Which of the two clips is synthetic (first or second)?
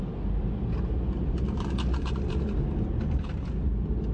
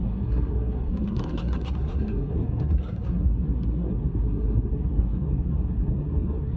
second